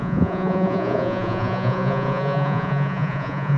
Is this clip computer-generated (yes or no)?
yes